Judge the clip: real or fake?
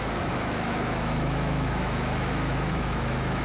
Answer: fake